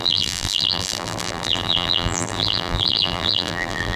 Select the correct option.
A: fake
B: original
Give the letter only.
A